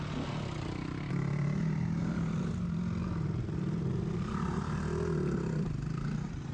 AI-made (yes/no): no